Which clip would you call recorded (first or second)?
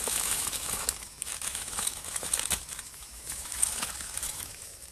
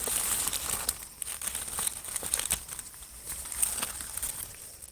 second